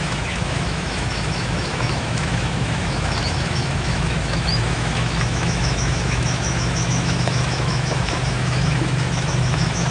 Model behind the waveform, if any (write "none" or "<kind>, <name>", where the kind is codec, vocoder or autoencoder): autoencoder, DAC-VAE